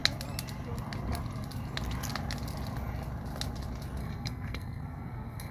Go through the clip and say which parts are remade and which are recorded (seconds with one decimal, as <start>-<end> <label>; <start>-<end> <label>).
0.0-4.0 recorded; 4.0-5.5 remade